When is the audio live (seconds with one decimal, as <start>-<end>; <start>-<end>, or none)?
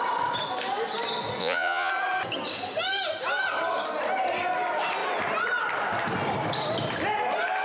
0.0-1.4; 1.9-7.6